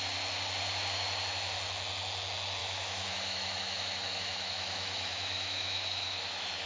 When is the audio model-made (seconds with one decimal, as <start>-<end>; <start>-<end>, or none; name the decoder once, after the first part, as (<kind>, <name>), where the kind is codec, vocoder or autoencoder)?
2.6-6.7 (autoencoder, DAC-VAE)